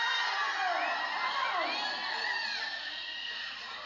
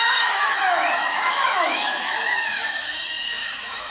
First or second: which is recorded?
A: first